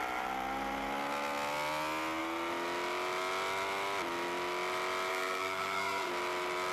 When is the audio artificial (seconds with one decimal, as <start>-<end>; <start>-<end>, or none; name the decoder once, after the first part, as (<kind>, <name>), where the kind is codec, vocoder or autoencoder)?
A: 5.1-6.1 (codec, SNAC)